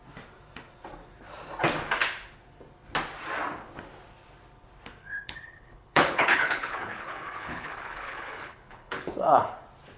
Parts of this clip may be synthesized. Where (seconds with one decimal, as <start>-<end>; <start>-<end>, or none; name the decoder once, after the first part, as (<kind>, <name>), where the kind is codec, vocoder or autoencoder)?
5.0-9.6 (codec, HILCodec)